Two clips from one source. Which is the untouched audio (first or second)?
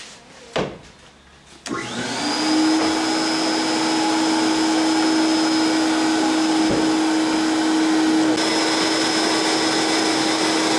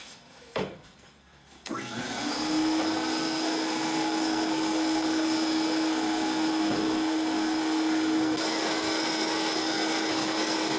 first